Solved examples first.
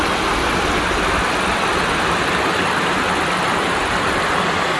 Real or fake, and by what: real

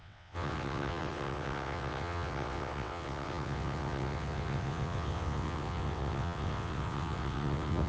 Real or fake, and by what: fake, vocoder, WaveNeXt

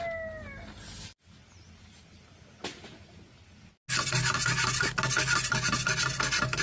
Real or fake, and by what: real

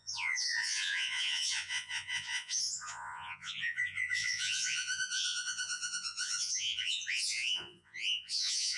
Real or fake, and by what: fake, vocoder, Vocos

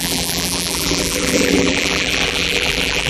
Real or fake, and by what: fake, vocoder, BigVGAN v2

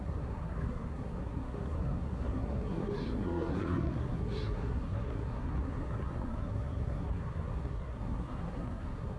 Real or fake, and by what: fake, codec, SNAC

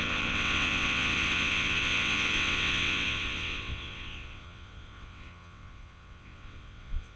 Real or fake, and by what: fake, vocoder, WaveNeXt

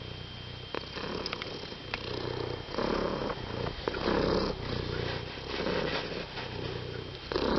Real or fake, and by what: real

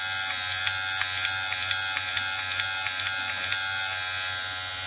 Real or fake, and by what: real